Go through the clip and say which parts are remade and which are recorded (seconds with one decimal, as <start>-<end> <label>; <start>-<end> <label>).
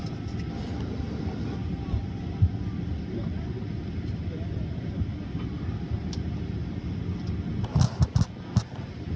0.0-9.2 recorded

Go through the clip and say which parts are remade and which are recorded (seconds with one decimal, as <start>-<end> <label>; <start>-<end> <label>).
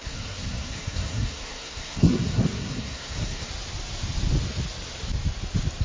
0.0-3.5 remade; 3.5-5.8 recorded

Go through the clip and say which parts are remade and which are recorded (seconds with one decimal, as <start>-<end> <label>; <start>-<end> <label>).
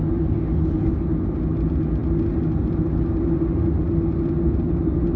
0.0-5.2 recorded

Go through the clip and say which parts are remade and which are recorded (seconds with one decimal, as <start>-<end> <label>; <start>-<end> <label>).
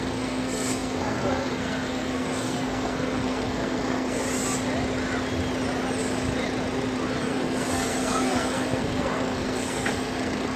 0.0-4.2 remade; 4.2-7.2 recorded; 7.2-10.6 remade